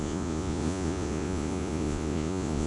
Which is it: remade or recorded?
remade